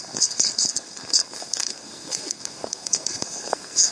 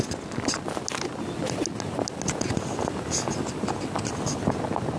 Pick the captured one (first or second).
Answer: second